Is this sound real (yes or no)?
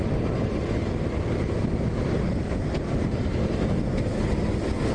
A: yes